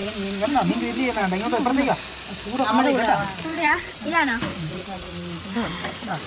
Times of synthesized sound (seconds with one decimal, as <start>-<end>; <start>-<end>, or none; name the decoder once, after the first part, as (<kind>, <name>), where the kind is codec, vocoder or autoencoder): 0.0-0.7 (vocoder, Vocos); 3.5-6.3